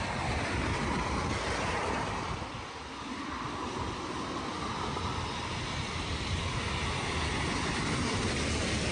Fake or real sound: real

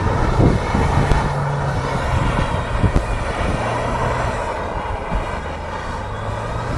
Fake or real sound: real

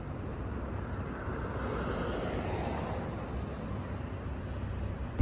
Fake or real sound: real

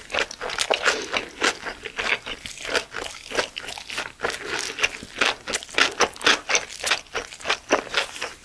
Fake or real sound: real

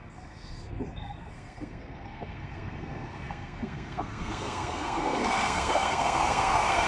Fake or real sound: fake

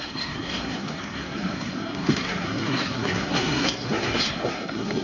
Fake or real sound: fake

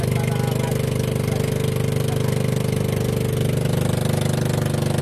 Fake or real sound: real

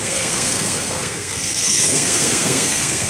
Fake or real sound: fake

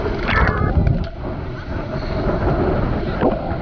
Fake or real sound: real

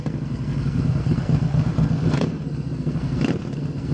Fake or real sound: fake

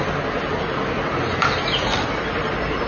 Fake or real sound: real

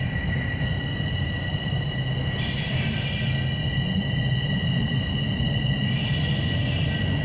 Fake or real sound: real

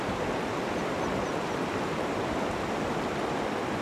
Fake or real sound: real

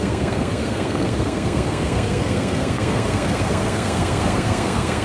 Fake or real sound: fake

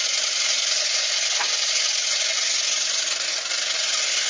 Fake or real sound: real